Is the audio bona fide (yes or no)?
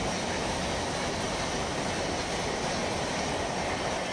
yes